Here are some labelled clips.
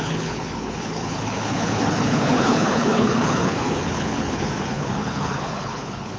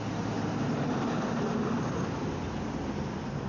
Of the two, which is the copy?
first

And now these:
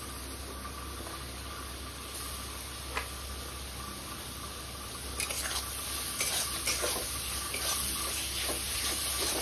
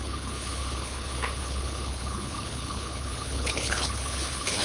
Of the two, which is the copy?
second